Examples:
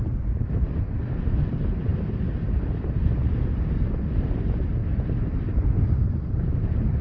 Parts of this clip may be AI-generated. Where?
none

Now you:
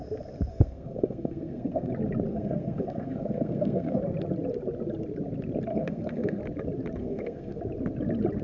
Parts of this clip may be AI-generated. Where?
0.5-1.9 (codec, SNAC); 2.3-4.0; 5.7-6.4; 7.0-7.6

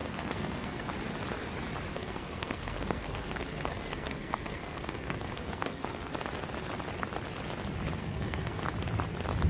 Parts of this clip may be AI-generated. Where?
0.0-0.9 (codec, SNAC); 1.9-6.1; 8.0-8.6

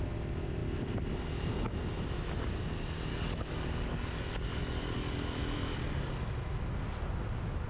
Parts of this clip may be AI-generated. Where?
3.1-5.4 (codec, DAC)

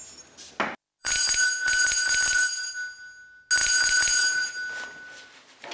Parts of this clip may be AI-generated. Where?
1.0-2.7 (vocoder, Vocos); 3.6-4.5

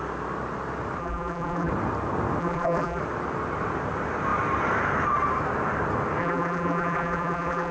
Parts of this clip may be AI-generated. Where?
1.0-1.7 (vocoder, BigVGAN v2); 2.4-3.0; 6.2-7.7